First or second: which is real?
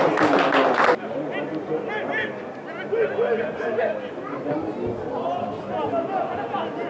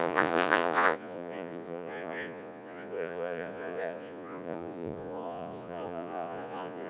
first